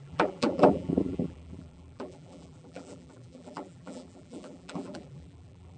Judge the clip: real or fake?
fake